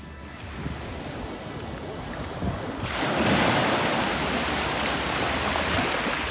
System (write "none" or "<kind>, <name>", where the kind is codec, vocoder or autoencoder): none